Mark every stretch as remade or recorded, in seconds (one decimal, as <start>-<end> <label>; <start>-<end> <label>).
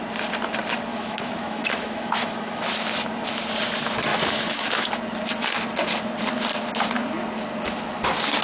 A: 0.0-0.9 recorded; 0.9-2.7 remade; 2.7-4.1 recorded; 4.1-4.9 remade; 4.9-8.4 recorded